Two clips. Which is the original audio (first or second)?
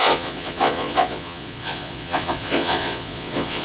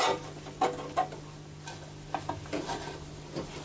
second